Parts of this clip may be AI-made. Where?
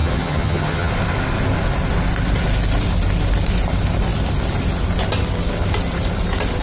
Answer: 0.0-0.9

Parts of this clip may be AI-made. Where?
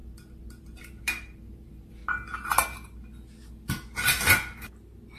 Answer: 0.0-2.0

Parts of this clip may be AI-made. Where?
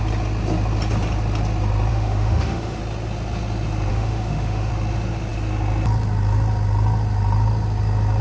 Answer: 1.9-2.8; 3.9-4.7